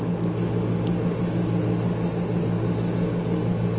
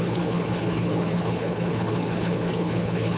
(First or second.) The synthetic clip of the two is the second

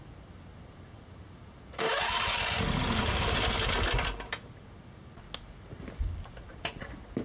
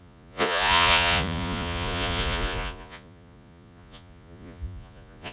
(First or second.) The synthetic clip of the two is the second